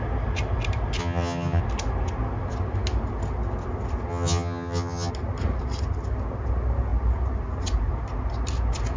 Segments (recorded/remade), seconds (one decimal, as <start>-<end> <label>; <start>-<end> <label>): 0.0-1.0 recorded; 1.0-1.6 remade; 1.6-4.1 recorded; 4.1-5.1 remade; 5.1-9.0 recorded